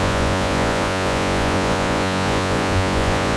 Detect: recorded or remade remade